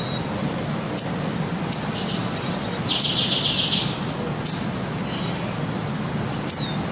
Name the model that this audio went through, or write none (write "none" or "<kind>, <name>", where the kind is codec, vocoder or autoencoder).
none